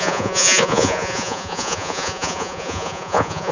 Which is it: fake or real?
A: fake